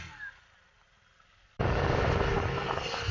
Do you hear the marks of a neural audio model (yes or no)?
no